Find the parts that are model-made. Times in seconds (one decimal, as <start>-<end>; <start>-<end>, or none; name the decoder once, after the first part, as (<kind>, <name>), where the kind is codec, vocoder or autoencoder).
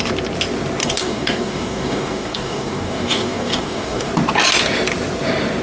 0.8-4.1 (codec, DAC)